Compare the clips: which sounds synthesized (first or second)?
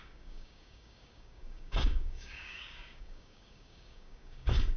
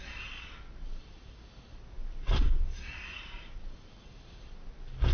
first